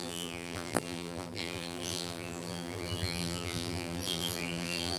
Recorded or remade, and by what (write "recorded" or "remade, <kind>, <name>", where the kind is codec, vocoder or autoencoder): remade, vocoder, BigVGAN v2